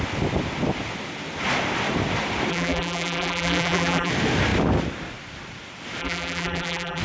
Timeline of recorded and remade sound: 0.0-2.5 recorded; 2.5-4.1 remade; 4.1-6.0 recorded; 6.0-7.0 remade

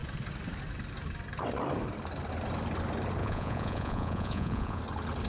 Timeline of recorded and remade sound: 0.0-3.2 recorded; 3.2-4.8 remade; 4.8-5.3 recorded

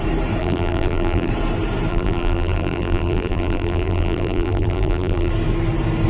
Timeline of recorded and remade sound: 0.0-0.4 recorded; 0.4-1.3 remade; 1.3-1.9 recorded; 1.9-5.3 remade; 5.3-6.1 recorded

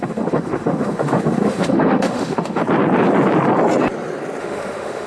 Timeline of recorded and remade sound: 0.0-2.6 remade; 2.6-4.4 recorded; 4.4-5.1 remade

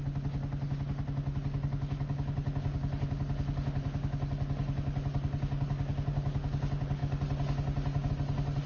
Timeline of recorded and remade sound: 0.0-8.7 recorded